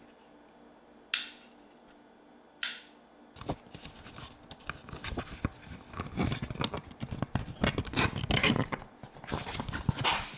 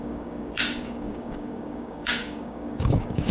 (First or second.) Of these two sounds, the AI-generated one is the second